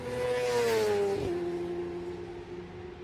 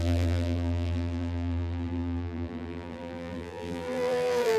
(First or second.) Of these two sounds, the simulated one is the second